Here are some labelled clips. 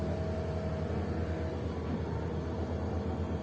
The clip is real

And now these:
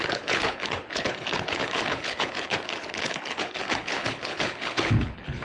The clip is fake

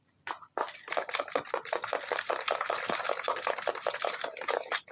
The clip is real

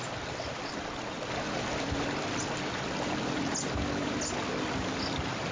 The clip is real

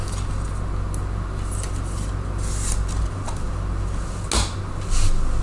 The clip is real